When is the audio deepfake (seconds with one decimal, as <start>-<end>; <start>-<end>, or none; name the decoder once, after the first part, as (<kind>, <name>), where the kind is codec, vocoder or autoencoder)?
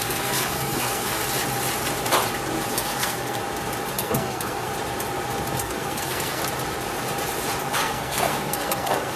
0.0-1.2 (codec, SNAC); 2.7-3.4; 3.9-4.7; 5.6-6.4; 7.6-9.2